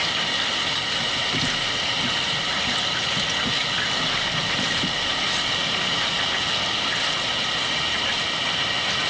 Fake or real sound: real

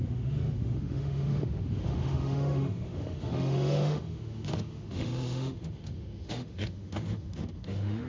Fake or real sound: fake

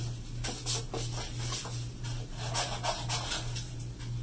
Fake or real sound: real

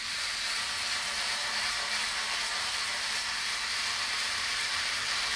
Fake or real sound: fake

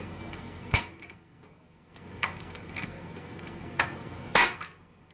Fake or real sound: fake